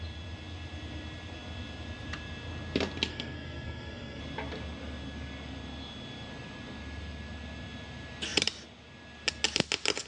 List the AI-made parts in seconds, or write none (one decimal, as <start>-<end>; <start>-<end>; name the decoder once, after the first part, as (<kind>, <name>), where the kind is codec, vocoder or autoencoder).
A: 3.1-4.2 (codec, SNAC)